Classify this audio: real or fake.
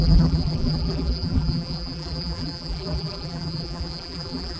fake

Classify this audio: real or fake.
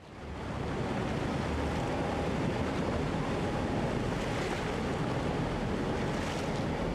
real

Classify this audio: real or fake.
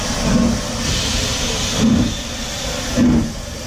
real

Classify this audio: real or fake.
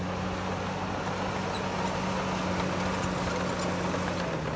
real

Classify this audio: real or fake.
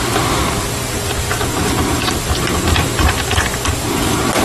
real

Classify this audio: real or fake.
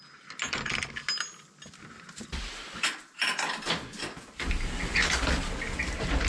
real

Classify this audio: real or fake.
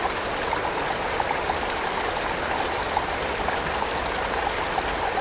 real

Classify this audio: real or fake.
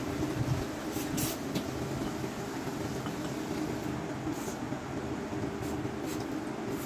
real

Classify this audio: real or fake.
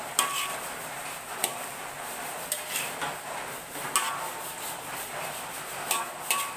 real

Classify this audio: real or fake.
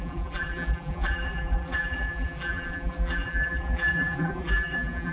fake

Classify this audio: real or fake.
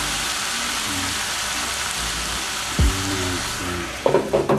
real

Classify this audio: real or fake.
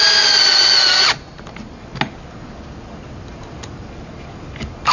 real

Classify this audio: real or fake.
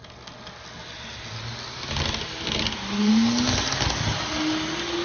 real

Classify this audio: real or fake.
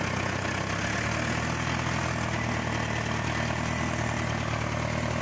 real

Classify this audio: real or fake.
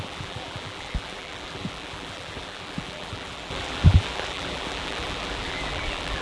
fake